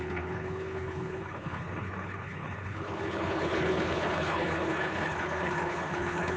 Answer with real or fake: fake